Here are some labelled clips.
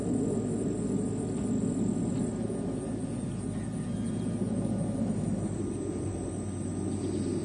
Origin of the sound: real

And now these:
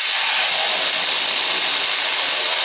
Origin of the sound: real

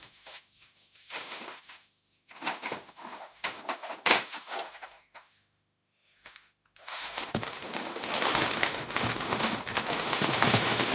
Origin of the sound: fake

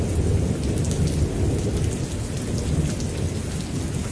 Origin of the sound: real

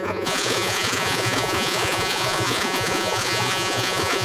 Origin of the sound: fake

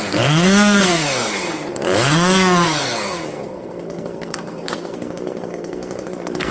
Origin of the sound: fake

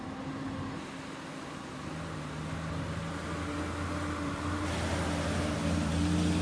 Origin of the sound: real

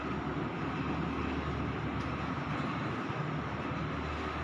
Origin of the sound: real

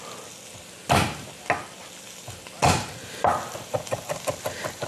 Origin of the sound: real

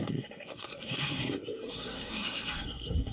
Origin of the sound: fake